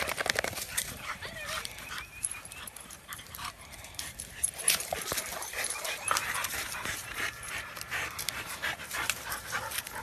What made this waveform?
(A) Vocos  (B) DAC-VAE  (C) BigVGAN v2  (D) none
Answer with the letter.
C